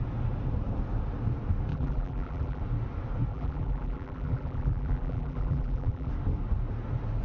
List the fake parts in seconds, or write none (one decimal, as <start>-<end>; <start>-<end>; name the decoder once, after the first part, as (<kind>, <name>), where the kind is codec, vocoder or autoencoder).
1.7-2.6 (vocoder, BigVGAN v2); 3.3-6.1